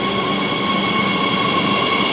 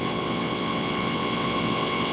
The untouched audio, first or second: first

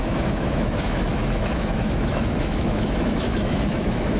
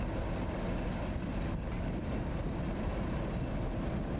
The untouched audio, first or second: second